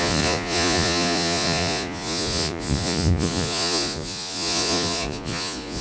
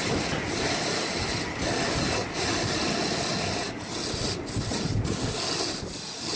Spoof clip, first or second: first